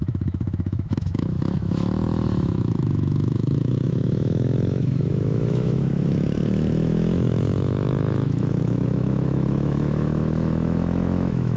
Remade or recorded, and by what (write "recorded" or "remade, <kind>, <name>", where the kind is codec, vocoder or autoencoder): remade, autoencoder, DAC-VAE